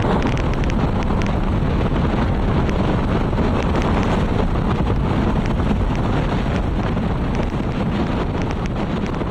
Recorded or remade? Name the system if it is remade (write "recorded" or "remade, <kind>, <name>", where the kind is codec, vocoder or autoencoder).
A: recorded